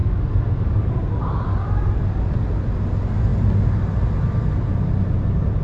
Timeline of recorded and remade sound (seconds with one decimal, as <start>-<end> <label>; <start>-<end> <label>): 0.0-0.9 remade; 0.9-5.6 recorded